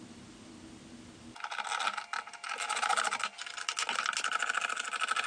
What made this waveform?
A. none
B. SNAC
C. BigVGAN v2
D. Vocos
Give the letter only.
A